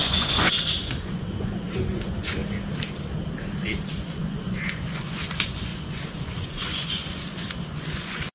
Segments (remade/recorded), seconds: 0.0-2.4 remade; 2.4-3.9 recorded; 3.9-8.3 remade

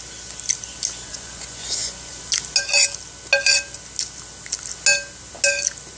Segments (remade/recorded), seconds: 0.0-1.1 recorded; 1.1-2.2 remade; 2.2-6.0 recorded

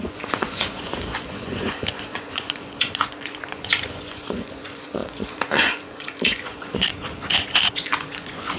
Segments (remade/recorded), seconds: 0.0-8.6 remade

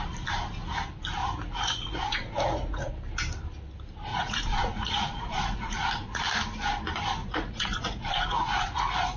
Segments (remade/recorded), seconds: 0.0-1.2 recorded; 1.2-2.9 remade; 2.9-4.1 recorded; 4.1-6.2 remade; 6.2-7.2 recorded; 7.2-9.2 remade

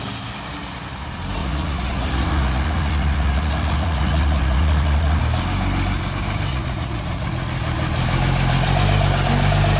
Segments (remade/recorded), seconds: 0.0-1.4 recorded; 1.4-5.2 remade; 5.2-6.5 recorded; 6.5-7.3 remade; 7.3-9.8 recorded

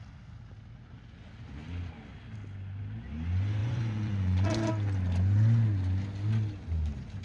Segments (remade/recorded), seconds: 0.0-3.6 recorded; 3.6-4.7 remade; 4.7-7.2 recorded